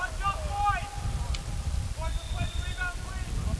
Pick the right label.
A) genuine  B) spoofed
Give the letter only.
A